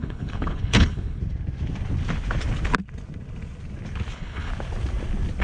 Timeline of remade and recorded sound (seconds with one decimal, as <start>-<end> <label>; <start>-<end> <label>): 0.0-1.2 remade; 1.2-4.1 recorded; 4.1-4.5 remade; 4.5-5.4 recorded

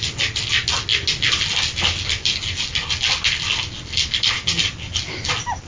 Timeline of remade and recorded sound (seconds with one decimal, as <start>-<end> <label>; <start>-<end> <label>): 0.0-5.7 recorded

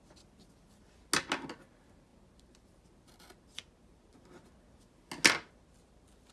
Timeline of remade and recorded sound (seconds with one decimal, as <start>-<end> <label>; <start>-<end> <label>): 0.0-6.3 recorded

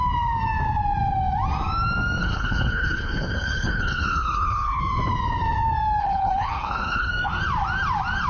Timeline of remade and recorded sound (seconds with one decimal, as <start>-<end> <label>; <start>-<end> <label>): 0.0-2.2 recorded; 2.2-4.8 remade; 4.8-6.0 recorded; 6.0-7.1 remade; 7.1-8.3 recorded

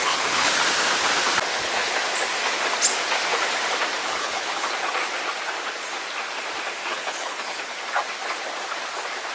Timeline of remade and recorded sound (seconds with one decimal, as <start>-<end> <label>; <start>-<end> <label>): 0.0-0.5 remade; 0.5-4.0 recorded; 4.0-4.7 remade; 4.7-6.9 recorded; 6.9-7.7 remade; 7.7-9.3 recorded

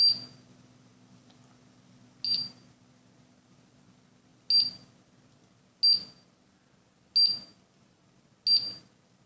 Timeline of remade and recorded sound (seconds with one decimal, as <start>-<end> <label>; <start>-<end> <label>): 0.0-9.3 recorded